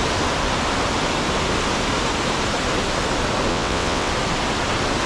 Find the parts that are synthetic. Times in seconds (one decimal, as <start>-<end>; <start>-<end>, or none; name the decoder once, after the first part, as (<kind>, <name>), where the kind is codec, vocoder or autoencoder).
3.5-4.1 (vocoder, WaveNeXt)